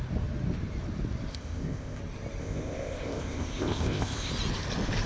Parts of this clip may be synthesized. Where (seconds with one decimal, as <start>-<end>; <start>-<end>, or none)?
1.3-2.0; 2.4-4.3